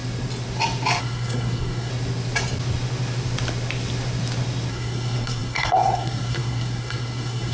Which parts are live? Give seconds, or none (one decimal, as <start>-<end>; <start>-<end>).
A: 0.0-1.0; 1.9-4.7